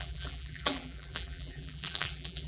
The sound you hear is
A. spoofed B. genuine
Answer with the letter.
A